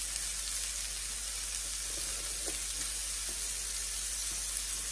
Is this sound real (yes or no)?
yes